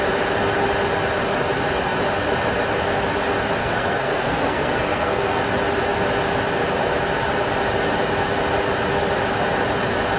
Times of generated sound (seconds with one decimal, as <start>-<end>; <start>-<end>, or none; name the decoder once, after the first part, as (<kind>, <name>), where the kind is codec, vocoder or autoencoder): 3.6-5.4 (codec, SNAC)

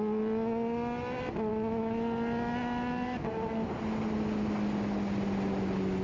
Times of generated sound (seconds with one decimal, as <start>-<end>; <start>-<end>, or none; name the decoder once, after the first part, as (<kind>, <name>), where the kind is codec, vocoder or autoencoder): none